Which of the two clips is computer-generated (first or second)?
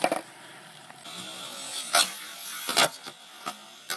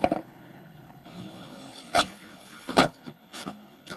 second